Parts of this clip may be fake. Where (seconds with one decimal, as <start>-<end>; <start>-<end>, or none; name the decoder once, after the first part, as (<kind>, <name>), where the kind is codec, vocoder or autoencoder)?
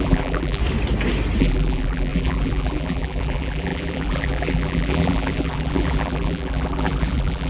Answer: 0.0-0.6 (vocoder, BigVGAN v2); 1.4-7.5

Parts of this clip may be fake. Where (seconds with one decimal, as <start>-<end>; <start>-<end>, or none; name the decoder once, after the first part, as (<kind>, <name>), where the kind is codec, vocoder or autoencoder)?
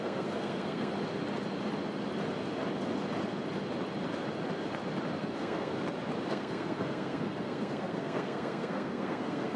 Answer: 0.0-0.9 (codec, SNAC); 5.2-5.7; 6.3-9.6